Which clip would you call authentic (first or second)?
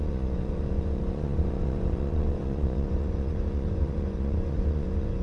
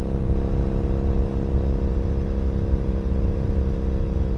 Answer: second